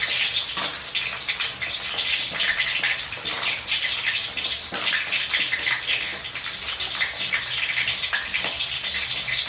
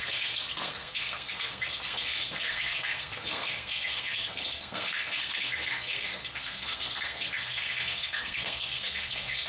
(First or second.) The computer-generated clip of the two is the second